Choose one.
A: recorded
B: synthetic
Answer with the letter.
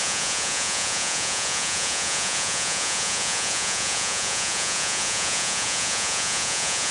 B